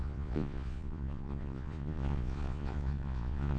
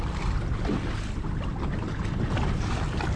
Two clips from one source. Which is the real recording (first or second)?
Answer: second